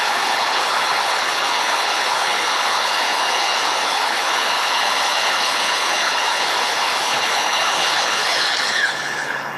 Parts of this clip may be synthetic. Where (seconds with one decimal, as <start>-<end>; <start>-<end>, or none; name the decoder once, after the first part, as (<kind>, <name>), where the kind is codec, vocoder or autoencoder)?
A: 0.0-9.6 (codec, HILCodec)